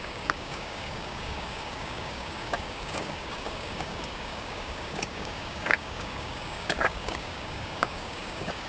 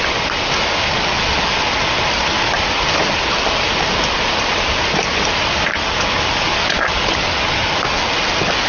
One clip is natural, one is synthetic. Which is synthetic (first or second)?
first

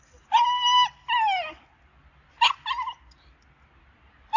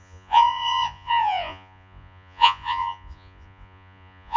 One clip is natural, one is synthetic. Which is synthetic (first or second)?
second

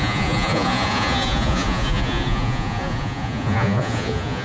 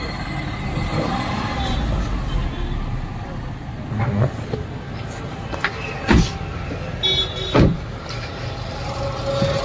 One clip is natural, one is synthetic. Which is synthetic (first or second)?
first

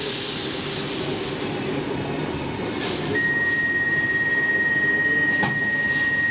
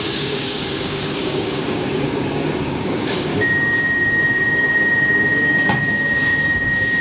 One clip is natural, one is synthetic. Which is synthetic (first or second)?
second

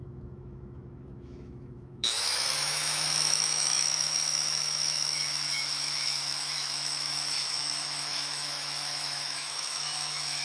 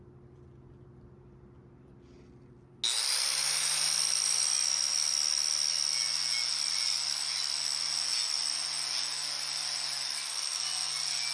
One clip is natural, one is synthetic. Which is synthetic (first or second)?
first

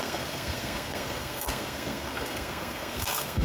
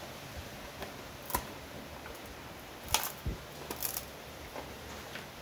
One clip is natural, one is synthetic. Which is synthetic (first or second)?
first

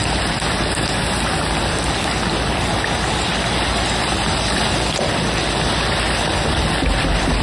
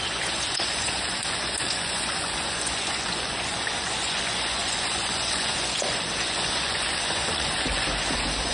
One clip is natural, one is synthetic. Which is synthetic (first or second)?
second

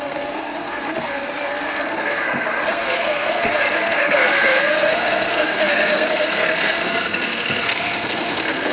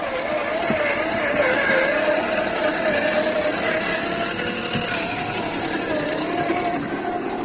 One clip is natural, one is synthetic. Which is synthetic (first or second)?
first